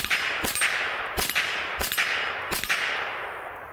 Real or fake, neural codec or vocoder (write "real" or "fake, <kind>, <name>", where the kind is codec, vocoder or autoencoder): real